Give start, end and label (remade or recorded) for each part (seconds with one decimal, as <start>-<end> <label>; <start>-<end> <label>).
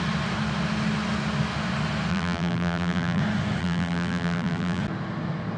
0.0-2.1 recorded; 2.1-3.2 remade; 3.2-3.6 recorded; 3.6-4.8 remade; 4.8-5.6 recorded